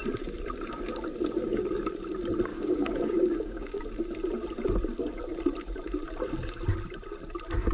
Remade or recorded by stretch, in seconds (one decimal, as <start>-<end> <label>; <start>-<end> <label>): 0.0-2.5 recorded; 2.5-3.8 remade; 3.8-7.7 recorded